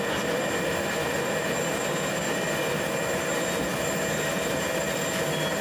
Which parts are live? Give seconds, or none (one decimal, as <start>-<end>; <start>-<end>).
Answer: 0.0-5.6